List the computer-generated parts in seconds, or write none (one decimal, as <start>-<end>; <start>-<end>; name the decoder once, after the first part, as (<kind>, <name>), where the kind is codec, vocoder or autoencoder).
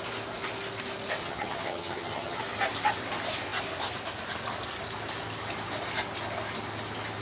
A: 1.2-2.4 (vocoder, HiFi-GAN)